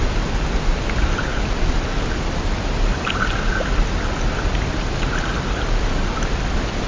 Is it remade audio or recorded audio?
recorded